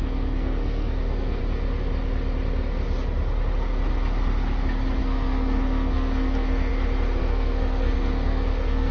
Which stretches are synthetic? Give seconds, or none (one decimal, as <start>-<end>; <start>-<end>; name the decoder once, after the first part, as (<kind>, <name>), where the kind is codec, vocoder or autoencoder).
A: 0.0-1.4 (codec, SNAC); 5.0-6.7; 7.2-8.9